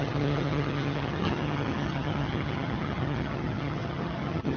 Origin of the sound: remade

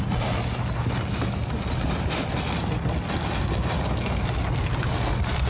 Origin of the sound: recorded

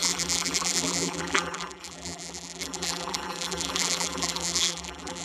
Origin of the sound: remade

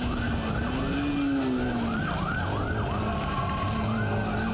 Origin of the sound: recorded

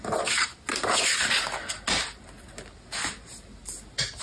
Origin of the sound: recorded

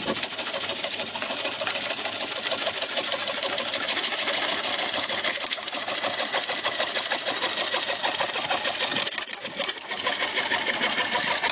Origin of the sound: recorded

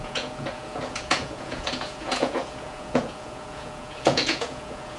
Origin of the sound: remade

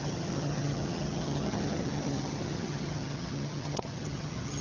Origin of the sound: remade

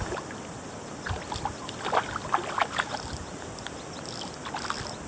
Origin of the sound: recorded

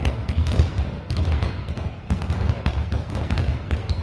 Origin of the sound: remade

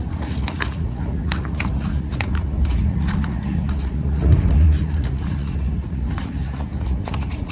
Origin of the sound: remade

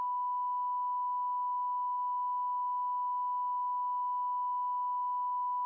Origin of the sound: recorded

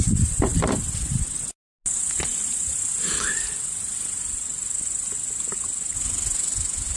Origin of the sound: recorded